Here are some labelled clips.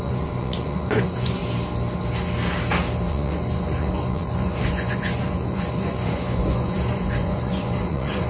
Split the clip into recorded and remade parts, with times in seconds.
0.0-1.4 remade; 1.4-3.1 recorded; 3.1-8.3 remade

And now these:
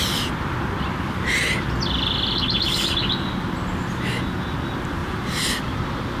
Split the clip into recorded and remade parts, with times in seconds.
0.0-5.0 recorded; 5.0-6.2 remade

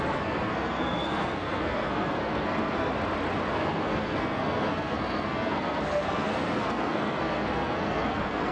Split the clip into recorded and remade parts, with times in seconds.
0.0-2.9 remade; 2.9-3.5 recorded; 3.5-8.5 remade

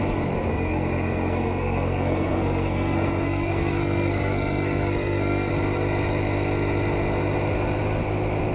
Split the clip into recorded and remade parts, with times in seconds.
0.0-0.5 recorded; 0.5-5.5 remade; 5.5-8.5 recorded

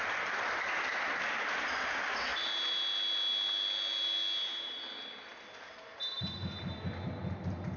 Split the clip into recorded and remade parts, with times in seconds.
0.0-7.8 recorded

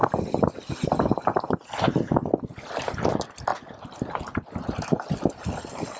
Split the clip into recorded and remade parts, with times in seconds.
0.0-6.0 recorded